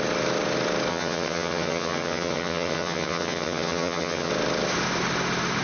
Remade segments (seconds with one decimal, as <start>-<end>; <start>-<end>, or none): 0.9-4.3